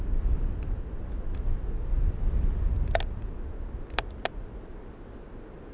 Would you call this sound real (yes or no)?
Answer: yes